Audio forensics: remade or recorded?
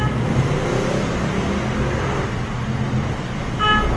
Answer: recorded